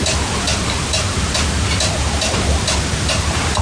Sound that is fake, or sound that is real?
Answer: real